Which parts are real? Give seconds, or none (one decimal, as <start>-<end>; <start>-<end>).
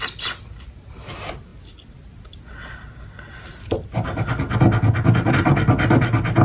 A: 0.0-6.4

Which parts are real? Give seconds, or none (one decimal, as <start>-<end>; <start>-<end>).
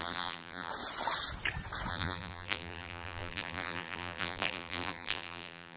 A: 0.7-1.9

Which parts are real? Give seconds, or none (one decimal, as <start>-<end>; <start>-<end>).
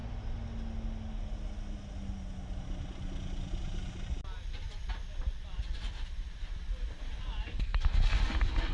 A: 0.0-8.7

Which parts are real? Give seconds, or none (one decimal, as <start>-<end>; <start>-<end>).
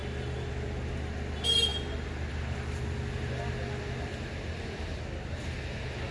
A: 0.0-6.1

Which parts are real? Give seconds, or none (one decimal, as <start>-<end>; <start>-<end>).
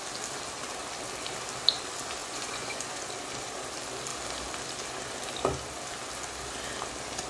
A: 0.0-2.2; 3.0-7.3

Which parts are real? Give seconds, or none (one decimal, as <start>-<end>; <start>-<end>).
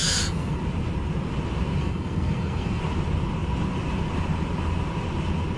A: 0.6-1.8; 2.8-5.6